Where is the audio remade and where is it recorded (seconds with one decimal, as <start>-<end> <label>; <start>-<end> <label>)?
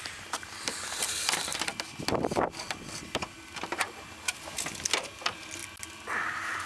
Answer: 0.0-6.7 recorded